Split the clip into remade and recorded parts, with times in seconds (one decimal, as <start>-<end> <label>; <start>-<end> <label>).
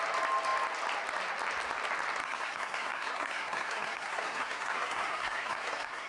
0.0-2.2 recorded; 2.2-6.1 remade